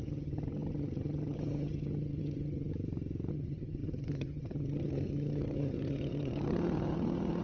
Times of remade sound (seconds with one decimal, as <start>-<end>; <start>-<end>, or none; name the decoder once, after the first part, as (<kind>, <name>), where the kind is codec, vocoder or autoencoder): 0.0-2.7 (vocoder, HiFi-GAN); 3.3-7.4